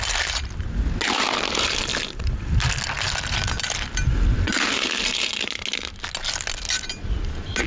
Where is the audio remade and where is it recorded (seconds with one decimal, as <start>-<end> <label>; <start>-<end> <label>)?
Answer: 0.0-7.7 recorded